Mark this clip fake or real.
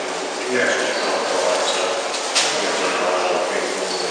real